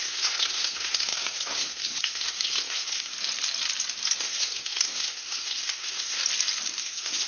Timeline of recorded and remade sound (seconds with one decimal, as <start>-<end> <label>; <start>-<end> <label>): 0.0-3.1 remade; 3.1-4.2 recorded; 4.2-6.2 remade; 6.2-6.8 recorded; 6.8-7.3 remade